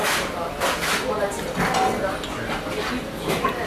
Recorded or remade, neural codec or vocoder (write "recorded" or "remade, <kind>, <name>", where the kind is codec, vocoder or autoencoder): recorded